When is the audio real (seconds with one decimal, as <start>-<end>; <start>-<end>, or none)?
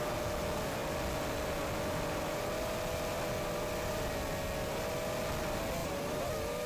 0.0-5.8